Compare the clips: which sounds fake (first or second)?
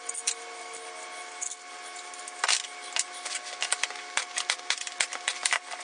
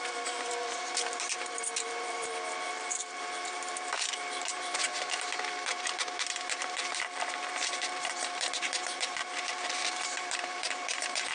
second